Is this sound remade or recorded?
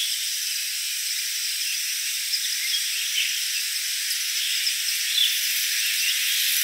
recorded